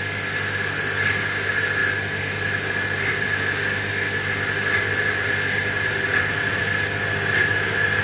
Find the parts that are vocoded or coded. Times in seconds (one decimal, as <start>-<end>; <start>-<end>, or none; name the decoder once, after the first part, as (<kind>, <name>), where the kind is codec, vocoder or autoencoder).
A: none